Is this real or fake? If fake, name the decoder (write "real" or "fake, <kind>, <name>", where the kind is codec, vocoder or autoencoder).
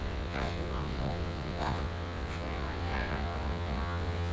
fake, vocoder, WaveNeXt